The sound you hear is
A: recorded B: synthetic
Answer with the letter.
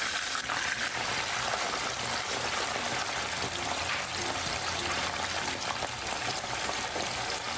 B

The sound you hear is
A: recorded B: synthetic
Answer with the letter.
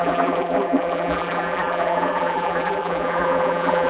B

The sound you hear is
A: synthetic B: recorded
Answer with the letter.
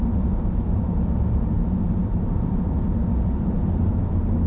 A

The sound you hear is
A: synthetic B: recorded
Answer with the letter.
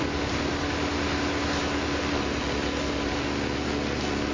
B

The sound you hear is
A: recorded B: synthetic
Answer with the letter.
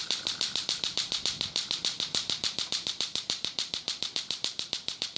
B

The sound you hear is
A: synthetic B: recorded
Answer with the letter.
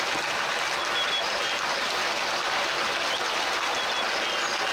B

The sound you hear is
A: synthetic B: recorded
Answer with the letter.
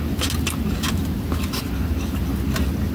B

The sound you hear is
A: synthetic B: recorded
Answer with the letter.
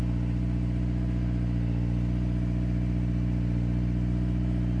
B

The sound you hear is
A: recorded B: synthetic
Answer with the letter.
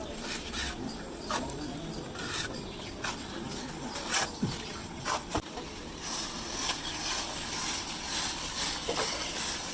A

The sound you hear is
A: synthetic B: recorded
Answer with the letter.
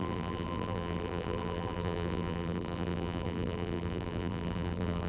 A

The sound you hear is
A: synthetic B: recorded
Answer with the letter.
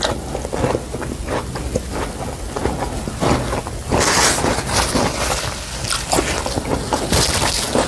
B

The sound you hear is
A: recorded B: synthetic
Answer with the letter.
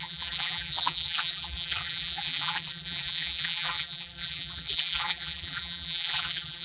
B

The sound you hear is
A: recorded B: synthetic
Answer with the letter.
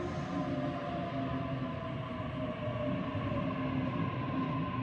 A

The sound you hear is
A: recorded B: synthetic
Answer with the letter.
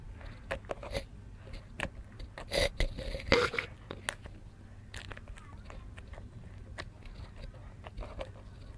A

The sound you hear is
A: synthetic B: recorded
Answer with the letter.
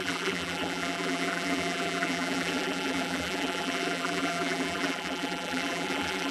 A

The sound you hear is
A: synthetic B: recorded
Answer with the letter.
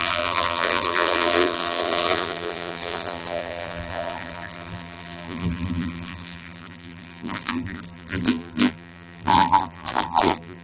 A